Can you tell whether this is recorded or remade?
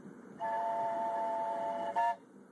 recorded